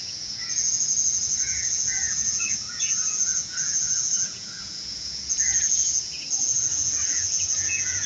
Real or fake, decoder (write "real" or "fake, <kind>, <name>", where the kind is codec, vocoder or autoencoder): fake, vocoder, Vocos